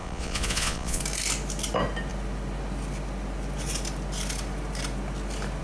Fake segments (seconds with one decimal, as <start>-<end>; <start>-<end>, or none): 0.0-1.0